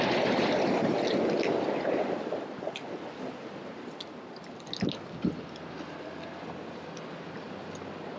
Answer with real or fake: real